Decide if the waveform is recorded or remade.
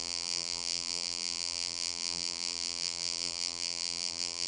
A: remade